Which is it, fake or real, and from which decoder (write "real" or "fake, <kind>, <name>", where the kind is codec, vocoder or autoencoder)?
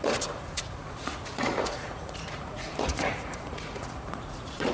fake, vocoder, Vocos